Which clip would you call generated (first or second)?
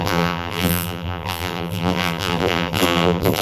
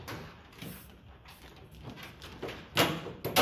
first